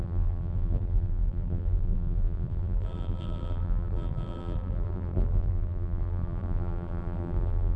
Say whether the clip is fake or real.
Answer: fake